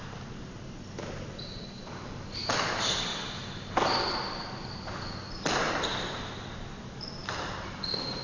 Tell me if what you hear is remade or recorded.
recorded